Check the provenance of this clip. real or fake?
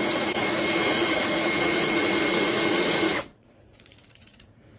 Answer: fake